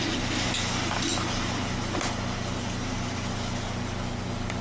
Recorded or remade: recorded